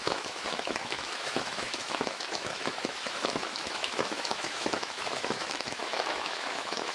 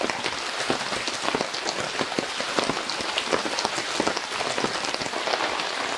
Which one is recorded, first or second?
second